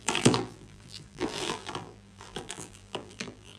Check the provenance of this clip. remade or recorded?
remade